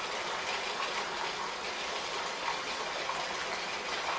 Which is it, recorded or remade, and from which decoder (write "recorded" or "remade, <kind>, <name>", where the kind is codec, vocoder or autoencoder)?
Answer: recorded